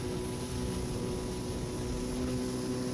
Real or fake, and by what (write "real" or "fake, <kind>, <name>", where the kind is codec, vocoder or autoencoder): real